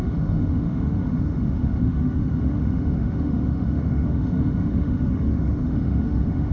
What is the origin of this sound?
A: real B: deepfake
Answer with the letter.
B